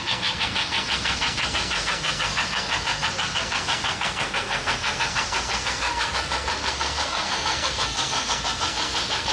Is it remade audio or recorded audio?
remade